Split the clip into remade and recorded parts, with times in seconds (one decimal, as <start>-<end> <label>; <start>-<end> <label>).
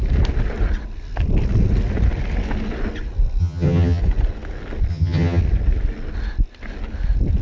0.0-3.4 recorded; 3.4-4.0 remade; 4.0-4.9 recorded; 4.9-5.4 remade; 5.4-7.4 recorded